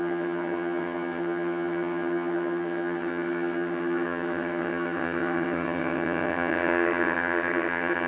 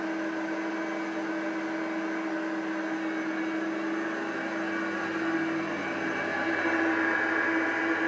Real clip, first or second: second